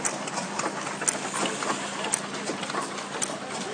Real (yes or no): yes